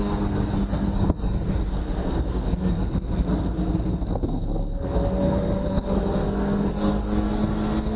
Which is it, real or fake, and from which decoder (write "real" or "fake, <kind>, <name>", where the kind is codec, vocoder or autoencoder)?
fake, codec, SNAC